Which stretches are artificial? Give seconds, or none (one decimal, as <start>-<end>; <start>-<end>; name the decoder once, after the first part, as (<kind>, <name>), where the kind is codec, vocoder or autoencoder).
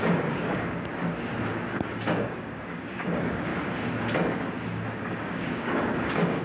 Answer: 0.0-0.9 (codec, DAC); 1.5-3.5; 5.0-6.4